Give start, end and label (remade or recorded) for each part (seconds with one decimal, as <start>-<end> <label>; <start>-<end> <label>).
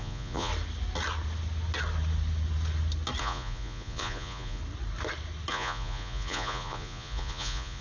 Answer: 0.0-0.5 remade; 0.5-3.2 recorded; 3.2-4.6 remade; 4.6-5.5 recorded; 5.5-7.8 remade